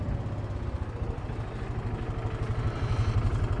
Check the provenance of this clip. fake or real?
real